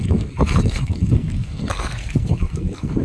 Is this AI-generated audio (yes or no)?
yes